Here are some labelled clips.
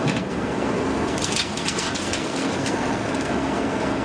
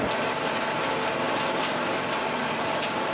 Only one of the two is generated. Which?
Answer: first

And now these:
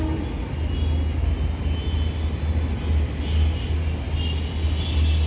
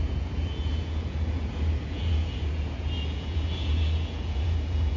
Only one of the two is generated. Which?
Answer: second